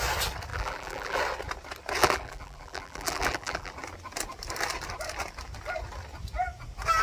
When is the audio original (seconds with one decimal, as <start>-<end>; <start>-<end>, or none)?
0.0-0.5; 1.2-2.0; 3.7-7.0